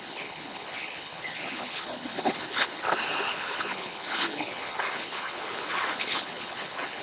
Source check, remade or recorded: remade